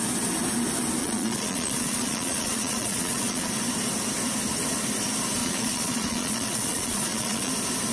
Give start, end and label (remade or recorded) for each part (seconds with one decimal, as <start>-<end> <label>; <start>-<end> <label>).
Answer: 0.0-1.0 recorded; 1.0-3.5 remade; 3.5-5.4 recorded; 5.4-7.5 remade; 7.5-7.9 recorded